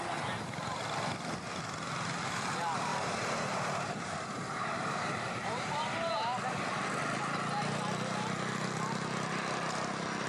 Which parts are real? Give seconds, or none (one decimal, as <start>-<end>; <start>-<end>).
0.0-2.9; 6.1-10.3